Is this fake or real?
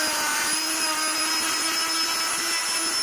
real